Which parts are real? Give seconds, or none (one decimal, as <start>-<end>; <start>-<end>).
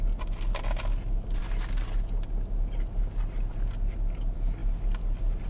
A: 0.0-5.5